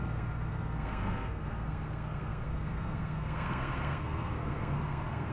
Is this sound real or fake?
fake